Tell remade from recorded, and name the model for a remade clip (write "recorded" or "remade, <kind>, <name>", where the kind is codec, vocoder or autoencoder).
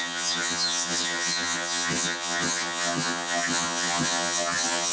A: remade, vocoder, HiFi-GAN